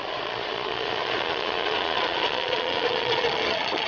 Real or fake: fake